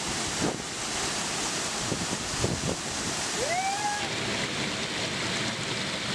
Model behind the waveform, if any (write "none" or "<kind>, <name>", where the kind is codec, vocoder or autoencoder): none